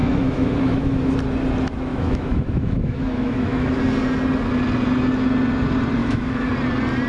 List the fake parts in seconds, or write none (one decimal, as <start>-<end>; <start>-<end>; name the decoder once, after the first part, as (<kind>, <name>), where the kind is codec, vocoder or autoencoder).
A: 0.0-1.1 (autoencoder, DAC-VAE); 1.9-3.8; 6.0-6.5